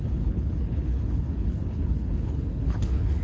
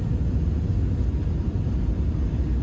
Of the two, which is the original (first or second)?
second